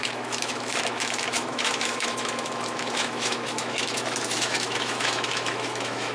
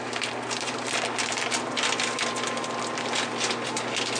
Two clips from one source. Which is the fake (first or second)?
first